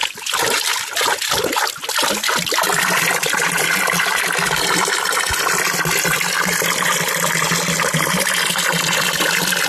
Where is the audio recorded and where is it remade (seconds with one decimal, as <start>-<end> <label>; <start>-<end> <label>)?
0.0-9.7 recorded